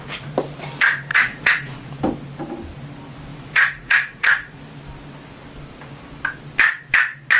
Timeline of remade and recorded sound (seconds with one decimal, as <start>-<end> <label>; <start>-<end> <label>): 0.0-1.1 recorded; 1.1-1.9 remade; 1.9-3.3 recorded; 3.3-4.6 remade; 4.6-7.4 recorded